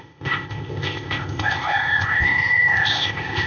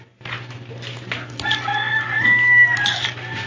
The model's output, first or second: first